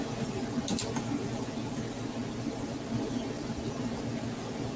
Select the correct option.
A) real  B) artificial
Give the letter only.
A